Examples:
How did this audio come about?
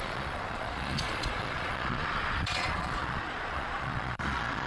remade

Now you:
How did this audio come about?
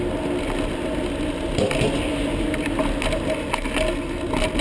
recorded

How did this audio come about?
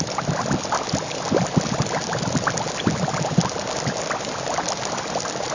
recorded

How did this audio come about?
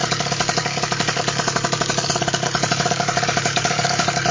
remade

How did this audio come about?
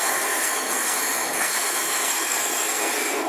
remade